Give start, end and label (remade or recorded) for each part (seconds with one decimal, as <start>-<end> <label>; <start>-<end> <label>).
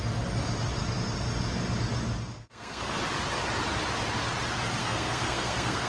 0.0-2.3 recorded; 2.3-3.0 remade; 3.0-4.8 recorded; 4.8-5.9 remade